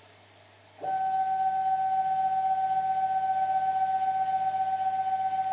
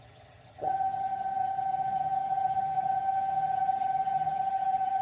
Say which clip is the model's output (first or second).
second